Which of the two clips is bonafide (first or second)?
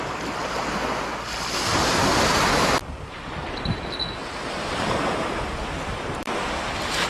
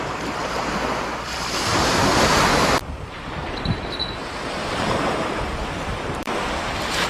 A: first